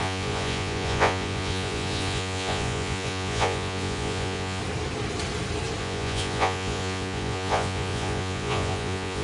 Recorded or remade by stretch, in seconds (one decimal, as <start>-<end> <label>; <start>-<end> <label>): 0.0-4.6 remade; 4.6-5.8 recorded; 5.8-9.2 remade